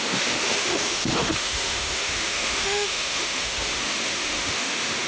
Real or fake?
fake